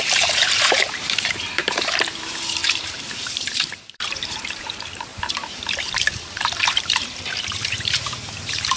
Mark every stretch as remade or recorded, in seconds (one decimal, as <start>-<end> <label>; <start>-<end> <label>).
0.0-2.6 remade; 2.6-3.2 recorded; 3.2-8.8 remade